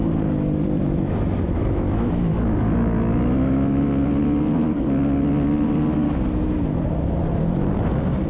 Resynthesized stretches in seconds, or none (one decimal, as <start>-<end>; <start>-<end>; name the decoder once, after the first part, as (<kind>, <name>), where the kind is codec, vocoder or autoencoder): 1.6-3.9 (autoencoder, DAC-VAE)